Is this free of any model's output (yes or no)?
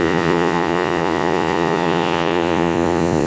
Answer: no